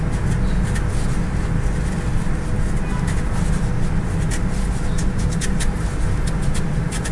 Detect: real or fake real